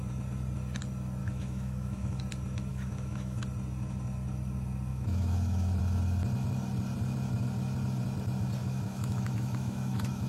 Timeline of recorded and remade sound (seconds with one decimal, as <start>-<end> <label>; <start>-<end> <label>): 0.0-1.2 recorded; 1.2-2.2 remade; 2.2-2.7 recorded; 2.7-3.4 remade; 3.4-4.9 recorded; 4.9-5.8 remade; 5.8-8.6 recorded; 8.6-10.3 remade